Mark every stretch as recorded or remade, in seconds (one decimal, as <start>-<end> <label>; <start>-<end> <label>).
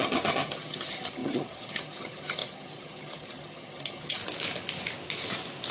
0.0-4.2 remade; 4.2-5.7 recorded